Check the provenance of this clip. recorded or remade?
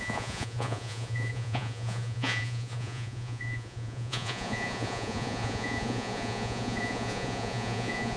remade